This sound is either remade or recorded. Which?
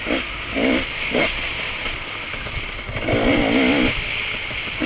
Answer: recorded